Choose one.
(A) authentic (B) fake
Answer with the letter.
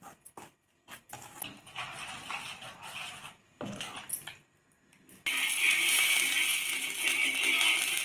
A